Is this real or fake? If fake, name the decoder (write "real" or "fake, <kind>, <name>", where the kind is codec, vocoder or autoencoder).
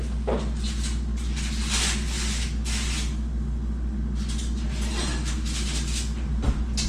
real